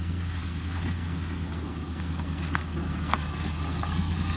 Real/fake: fake